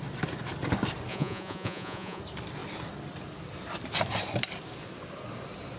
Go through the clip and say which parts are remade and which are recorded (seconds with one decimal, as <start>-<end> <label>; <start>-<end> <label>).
0.0-1.1 recorded; 1.1-2.2 remade; 2.2-5.8 recorded